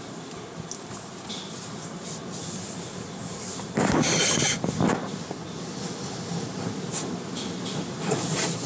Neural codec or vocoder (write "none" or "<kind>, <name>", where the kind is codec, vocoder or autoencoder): none